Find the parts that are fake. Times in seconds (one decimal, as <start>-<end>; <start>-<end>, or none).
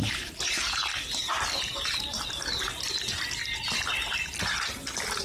none